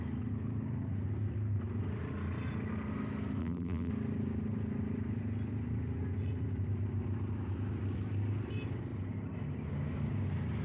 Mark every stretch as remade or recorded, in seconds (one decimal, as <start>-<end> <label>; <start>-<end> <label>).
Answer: 0.0-3.4 recorded; 3.4-3.9 remade; 3.9-10.6 recorded